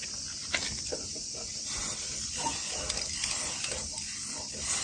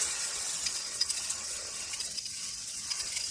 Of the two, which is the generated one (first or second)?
second